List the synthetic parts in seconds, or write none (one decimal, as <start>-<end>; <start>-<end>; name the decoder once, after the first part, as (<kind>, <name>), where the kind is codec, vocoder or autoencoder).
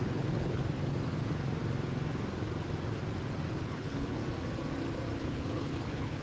0.0-0.6 (codec, HILCodec); 3.5-4.2; 5.2-6.2